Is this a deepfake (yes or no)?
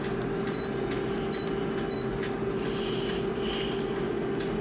no